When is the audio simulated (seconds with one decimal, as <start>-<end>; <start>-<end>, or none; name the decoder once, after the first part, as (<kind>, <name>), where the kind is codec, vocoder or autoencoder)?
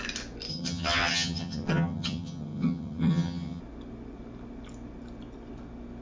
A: 0.5-3.6 (vocoder, HiFi-GAN)